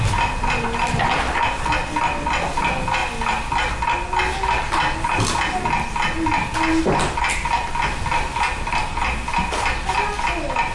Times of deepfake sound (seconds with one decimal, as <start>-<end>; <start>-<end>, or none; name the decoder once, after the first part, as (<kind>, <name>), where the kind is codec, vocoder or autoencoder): none